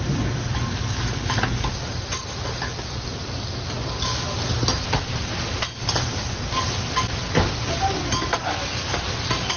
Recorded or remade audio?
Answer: recorded